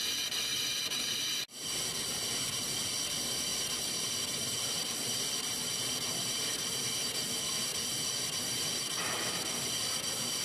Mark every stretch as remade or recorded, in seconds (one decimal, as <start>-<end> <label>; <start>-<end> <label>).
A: 0.0-0.5 recorded; 0.5-1.2 remade; 1.2-10.4 recorded